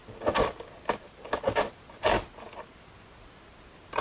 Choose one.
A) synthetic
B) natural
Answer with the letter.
B